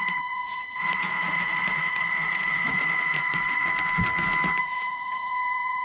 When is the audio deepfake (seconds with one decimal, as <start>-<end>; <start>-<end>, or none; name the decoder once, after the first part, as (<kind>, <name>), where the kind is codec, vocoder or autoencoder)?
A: 0.0-3.7 (vocoder, Vocos); 4.6-5.8